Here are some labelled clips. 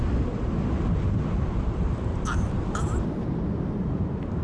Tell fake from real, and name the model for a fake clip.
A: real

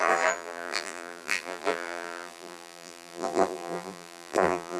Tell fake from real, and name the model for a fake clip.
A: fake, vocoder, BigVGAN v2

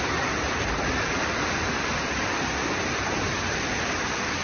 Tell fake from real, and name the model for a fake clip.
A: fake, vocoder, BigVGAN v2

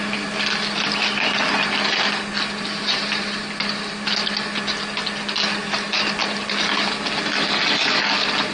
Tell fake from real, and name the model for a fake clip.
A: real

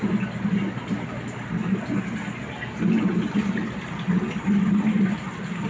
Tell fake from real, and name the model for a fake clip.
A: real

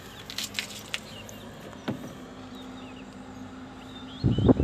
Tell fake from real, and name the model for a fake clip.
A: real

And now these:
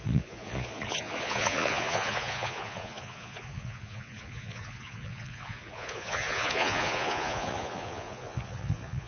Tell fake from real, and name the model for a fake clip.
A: fake, vocoder, Vocos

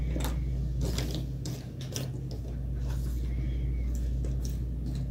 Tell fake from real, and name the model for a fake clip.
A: real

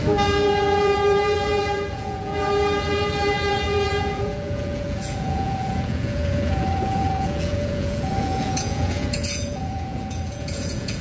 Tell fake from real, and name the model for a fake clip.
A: fake, vocoder, Vocos